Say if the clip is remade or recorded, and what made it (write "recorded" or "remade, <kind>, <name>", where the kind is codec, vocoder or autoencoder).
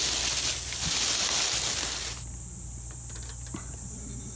recorded